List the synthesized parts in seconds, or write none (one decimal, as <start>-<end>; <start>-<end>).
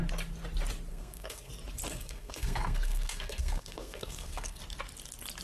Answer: 0.9-1.5; 1.9-4.6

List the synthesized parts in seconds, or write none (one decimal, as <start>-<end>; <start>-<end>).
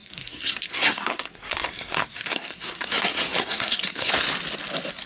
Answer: 0.0-4.1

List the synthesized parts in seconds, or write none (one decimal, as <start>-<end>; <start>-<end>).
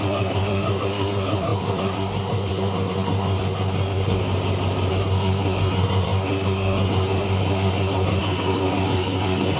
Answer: 0.0-4.2; 4.9-9.6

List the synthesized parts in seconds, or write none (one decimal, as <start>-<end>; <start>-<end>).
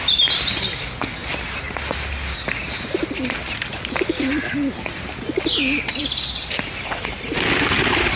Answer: none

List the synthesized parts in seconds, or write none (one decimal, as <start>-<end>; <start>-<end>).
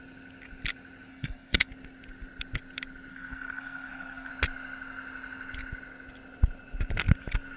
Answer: 1.1-1.7; 3.1-4.3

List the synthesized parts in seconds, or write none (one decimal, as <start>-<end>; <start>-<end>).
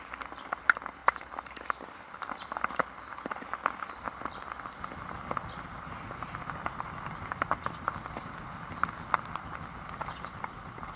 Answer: none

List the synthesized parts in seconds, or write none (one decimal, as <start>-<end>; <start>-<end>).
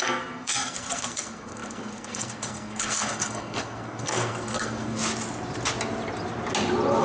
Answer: 0.0-5.0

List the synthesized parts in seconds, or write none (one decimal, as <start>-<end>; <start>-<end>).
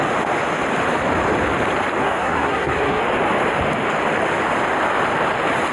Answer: 2.0-3.0